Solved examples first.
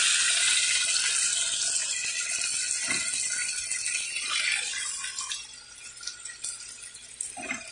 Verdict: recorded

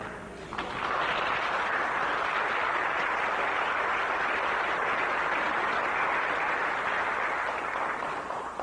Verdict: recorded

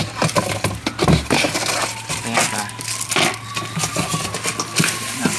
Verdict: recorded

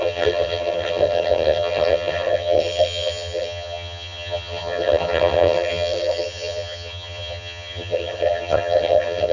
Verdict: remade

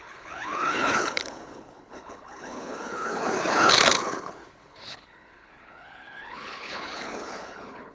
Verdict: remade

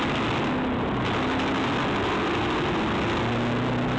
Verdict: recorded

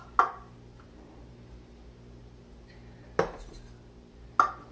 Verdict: recorded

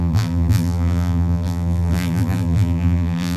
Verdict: remade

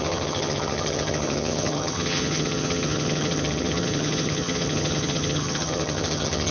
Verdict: remade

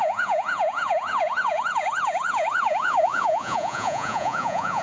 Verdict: remade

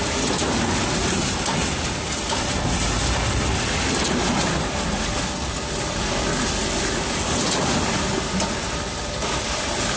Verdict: recorded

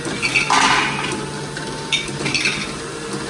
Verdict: recorded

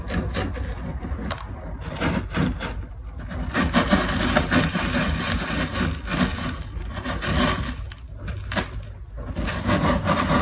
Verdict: recorded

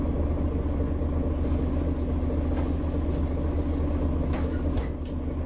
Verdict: recorded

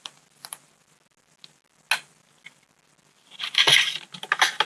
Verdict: recorded